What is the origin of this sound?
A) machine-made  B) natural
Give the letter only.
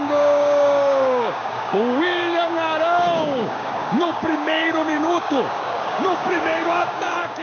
A